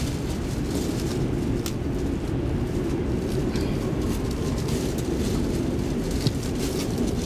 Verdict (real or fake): real